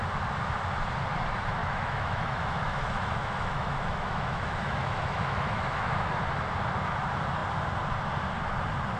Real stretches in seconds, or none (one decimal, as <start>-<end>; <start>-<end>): 0.0-1.6; 6.1-9.0